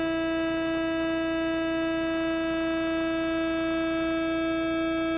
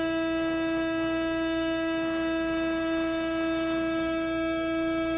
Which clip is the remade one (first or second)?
second